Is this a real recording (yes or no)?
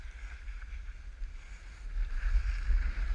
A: yes